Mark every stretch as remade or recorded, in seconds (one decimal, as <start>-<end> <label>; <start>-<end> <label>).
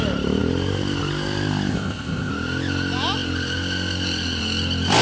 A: 0.0-1.7 recorded; 1.7-2.3 remade; 2.3-5.0 recorded